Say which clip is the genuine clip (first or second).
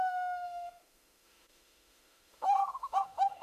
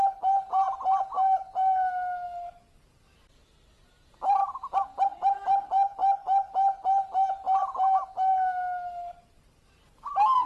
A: second